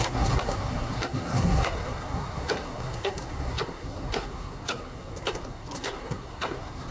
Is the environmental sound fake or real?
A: fake